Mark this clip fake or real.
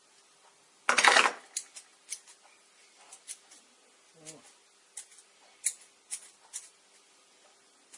real